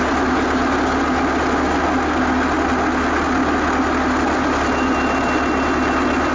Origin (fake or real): real